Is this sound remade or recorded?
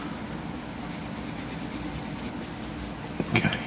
recorded